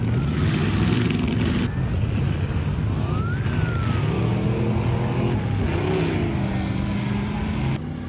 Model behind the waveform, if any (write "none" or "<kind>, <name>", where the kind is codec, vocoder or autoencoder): none